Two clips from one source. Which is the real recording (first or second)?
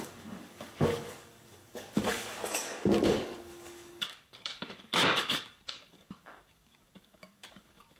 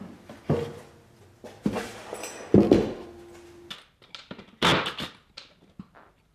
second